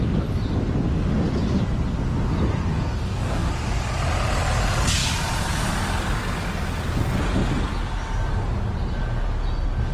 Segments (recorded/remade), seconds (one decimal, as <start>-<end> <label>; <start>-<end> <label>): 0.0-2.7 recorded; 2.7-3.5 remade; 3.5-9.9 recorded